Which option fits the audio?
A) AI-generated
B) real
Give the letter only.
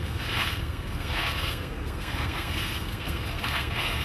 A